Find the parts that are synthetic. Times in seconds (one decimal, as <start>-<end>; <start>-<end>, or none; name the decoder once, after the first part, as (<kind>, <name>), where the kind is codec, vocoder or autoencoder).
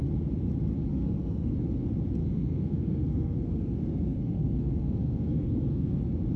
0.9-1.5 (codec, SNAC); 2.2-6.0